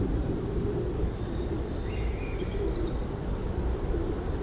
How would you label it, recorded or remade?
remade